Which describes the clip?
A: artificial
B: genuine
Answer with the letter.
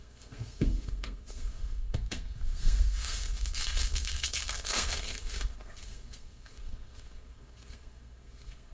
A